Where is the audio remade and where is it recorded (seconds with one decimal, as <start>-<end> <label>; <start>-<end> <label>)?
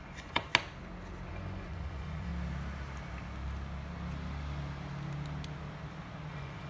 0.0-0.5 remade; 0.5-1.3 recorded; 1.3-2.3 remade; 2.3-6.3 recorded; 6.3-6.7 remade